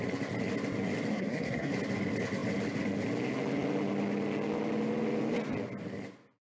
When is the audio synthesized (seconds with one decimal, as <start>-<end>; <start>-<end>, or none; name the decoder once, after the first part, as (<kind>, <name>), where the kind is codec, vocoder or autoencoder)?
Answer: 1.1-1.7 (codec, SNAC)